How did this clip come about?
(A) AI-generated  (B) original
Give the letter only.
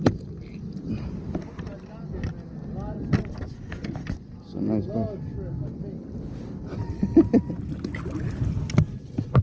B